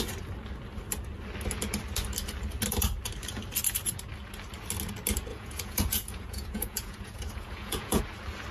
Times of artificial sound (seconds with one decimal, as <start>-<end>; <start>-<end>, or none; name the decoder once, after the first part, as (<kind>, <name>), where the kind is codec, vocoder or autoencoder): 5.3-8.0 (vocoder, Vocos)